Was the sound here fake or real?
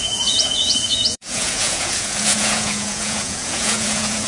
fake